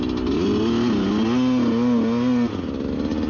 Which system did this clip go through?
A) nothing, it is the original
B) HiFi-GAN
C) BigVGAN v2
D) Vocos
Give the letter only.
A